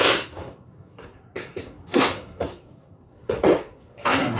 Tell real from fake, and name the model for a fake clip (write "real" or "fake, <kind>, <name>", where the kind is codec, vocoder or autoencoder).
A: fake, codec, SNAC